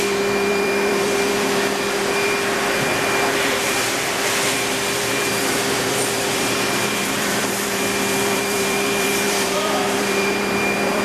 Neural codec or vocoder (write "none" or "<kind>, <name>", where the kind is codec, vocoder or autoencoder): vocoder, BigVGAN v2